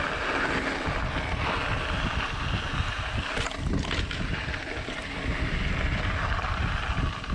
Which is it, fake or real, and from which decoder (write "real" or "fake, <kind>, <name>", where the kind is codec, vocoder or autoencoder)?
real